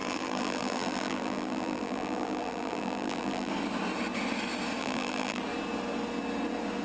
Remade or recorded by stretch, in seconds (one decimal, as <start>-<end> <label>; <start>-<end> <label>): 0.0-3.5 remade; 3.5-4.8 recorded; 4.8-5.4 remade; 5.4-6.8 recorded